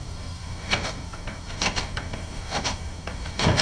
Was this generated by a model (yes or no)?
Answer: yes